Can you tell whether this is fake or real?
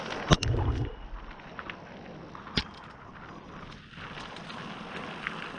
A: real